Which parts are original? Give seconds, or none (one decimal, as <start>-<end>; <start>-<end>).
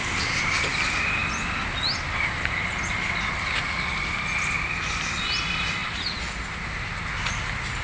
0.0-7.8